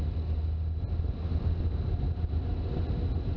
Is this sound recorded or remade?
recorded